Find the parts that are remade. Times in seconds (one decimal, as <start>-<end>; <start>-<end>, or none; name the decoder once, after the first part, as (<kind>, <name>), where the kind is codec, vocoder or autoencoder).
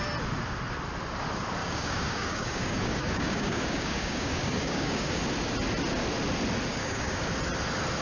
1.6-5.2 (codec, DAC); 6.7-7.3